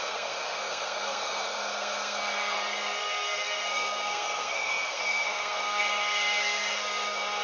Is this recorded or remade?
remade